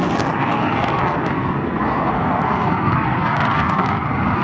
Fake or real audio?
fake